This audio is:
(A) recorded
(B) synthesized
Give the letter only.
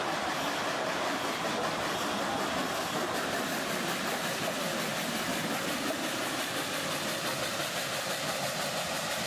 B